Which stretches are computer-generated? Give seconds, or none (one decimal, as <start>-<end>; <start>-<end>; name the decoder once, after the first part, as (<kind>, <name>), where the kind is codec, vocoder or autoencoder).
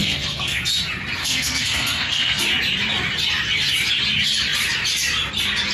0.0-0.6 (codec, SNAC); 1.2-2.4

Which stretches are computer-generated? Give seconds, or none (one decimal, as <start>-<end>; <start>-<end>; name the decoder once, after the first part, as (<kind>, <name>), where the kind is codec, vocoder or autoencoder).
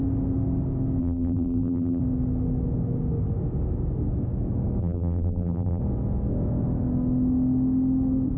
1.0-2.0 (vocoder, BigVGAN v2); 4.8-5.8